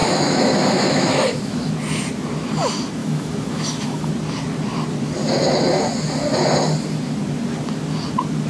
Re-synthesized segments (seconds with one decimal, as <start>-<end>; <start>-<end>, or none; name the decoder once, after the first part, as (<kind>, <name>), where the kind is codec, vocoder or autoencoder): 0.0-1.7 (autoencoder, DAC-VAE); 3.0-4.1